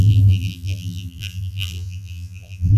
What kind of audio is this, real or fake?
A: fake